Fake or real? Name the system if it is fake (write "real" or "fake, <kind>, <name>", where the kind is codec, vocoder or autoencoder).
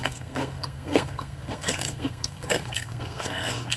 fake, codec, SNAC